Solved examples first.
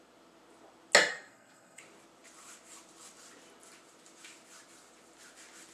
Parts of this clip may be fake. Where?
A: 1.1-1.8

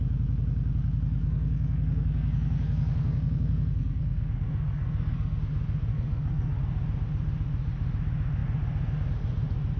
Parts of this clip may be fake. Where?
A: 1.2-5.4; 5.9-6.6